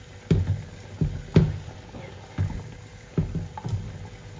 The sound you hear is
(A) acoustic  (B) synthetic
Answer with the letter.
A